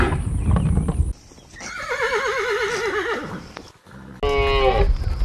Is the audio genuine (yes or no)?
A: yes